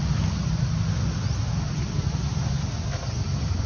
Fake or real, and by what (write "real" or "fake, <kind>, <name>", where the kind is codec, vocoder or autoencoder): real